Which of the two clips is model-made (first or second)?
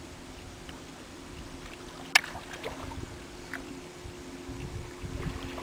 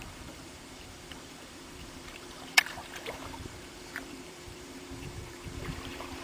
second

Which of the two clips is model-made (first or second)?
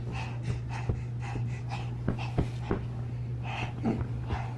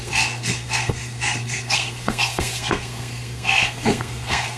second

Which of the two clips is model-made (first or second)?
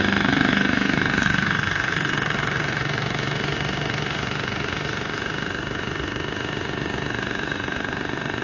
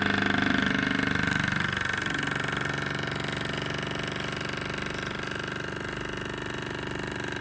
first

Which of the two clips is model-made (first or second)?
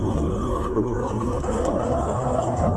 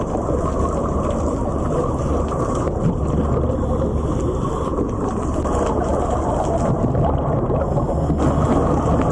first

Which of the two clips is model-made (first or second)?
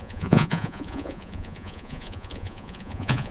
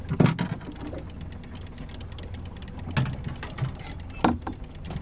first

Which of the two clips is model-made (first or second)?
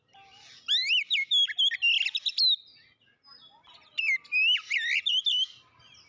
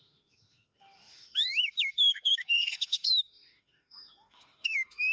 second